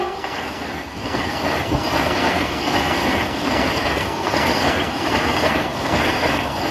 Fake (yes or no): yes